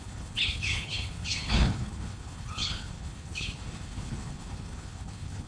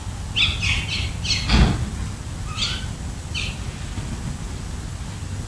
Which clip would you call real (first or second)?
second